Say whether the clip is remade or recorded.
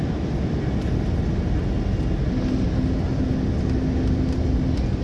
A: recorded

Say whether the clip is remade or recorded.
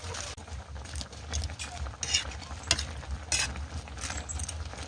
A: recorded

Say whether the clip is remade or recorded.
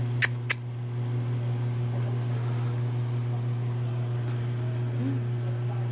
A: recorded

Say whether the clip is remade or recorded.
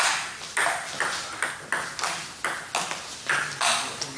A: recorded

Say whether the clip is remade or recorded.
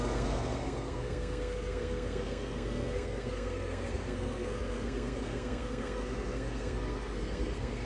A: remade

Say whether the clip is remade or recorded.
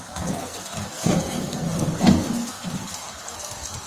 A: remade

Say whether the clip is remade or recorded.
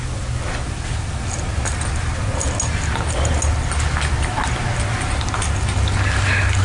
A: recorded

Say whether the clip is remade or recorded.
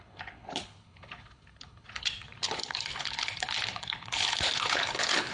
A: remade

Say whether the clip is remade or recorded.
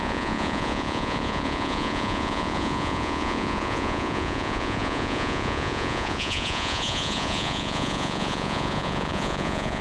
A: remade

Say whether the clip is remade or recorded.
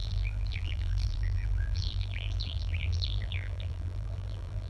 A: remade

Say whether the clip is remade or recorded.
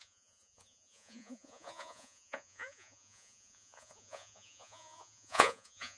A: remade